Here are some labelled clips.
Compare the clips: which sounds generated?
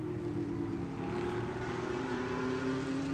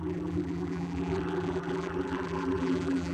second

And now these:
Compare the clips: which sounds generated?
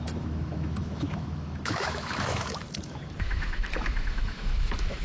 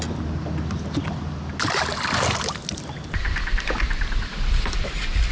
first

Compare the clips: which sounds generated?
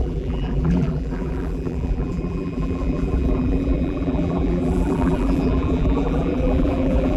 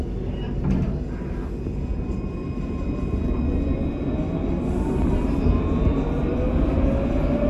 first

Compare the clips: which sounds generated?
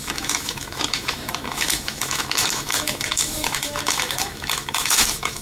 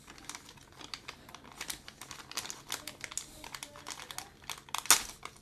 first